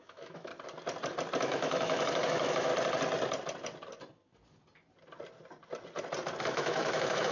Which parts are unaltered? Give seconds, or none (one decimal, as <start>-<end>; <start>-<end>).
0.5-1.4; 2.7-6.4